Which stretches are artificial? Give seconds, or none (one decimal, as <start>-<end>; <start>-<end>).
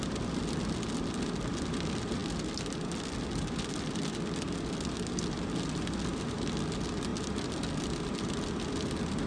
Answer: none